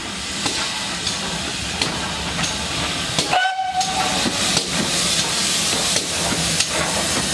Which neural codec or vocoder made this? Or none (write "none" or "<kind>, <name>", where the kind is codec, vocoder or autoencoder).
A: none